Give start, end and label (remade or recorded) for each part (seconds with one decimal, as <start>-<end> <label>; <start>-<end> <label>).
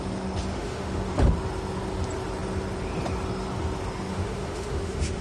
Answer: 0.0-0.5 recorded; 0.5-1.1 remade; 1.1-4.1 recorded; 4.1-5.2 remade